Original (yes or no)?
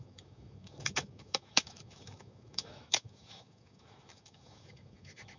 no